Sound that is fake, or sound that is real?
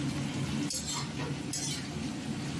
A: real